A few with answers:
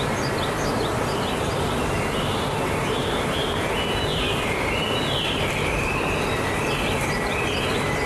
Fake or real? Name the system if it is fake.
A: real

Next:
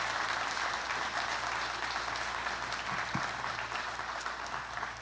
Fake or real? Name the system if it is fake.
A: real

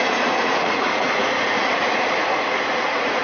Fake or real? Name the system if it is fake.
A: fake, vocoder, Vocos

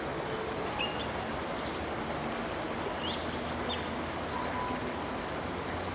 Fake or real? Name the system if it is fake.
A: real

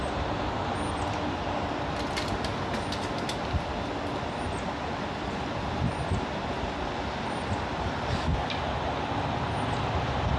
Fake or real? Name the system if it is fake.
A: real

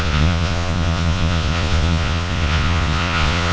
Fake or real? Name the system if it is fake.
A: fake, vocoder, Vocos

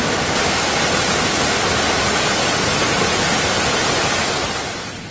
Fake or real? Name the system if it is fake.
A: real